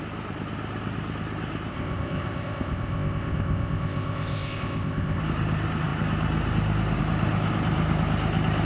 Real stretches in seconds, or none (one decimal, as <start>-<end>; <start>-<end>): 0.0-1.7; 5.2-8.6